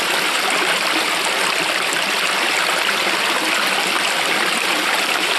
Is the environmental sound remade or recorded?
recorded